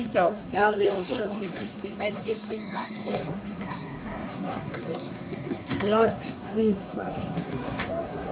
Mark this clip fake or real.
fake